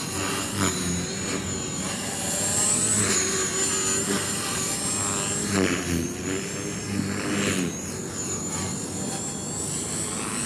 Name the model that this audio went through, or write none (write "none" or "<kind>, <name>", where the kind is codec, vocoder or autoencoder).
none